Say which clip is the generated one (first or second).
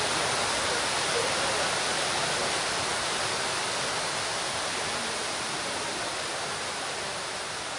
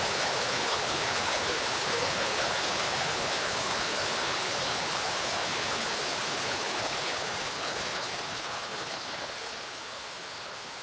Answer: second